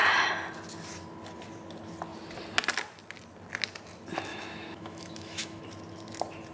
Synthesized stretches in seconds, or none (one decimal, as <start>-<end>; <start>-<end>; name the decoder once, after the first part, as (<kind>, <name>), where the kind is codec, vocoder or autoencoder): 4.3-5.6 (autoencoder, DAC-VAE)